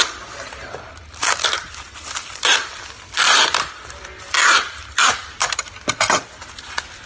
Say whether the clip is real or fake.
fake